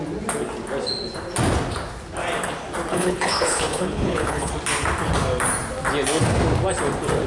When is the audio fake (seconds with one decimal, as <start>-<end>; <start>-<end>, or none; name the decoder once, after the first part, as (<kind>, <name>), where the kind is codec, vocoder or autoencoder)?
2.9-4.5 (codec, HILCodec)